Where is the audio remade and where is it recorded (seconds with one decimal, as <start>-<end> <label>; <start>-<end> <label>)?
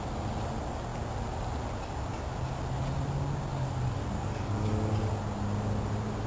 0.0-3.5 recorded; 3.5-4.7 remade; 4.7-6.3 recorded